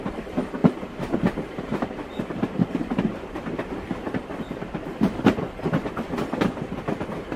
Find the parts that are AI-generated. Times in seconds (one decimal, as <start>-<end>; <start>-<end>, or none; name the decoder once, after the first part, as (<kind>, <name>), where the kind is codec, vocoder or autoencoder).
0.0-7.4 (vocoder, BigVGAN v2)